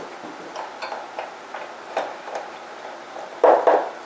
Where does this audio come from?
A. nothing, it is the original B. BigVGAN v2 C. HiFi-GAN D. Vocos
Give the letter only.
A